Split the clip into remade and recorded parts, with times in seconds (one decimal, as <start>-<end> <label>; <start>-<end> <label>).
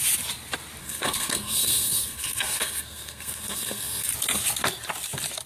0.0-0.8 recorded; 0.8-4.1 remade; 4.1-5.5 recorded